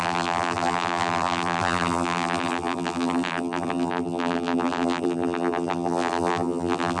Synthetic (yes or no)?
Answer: yes